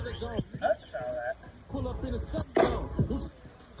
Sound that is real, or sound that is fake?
real